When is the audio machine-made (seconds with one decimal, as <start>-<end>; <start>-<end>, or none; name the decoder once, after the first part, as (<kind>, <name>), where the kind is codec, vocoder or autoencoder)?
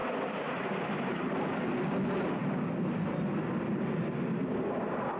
none